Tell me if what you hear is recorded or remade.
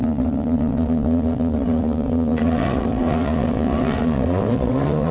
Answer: remade